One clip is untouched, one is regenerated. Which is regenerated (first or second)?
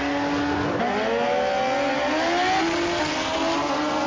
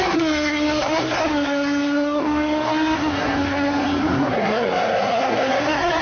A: second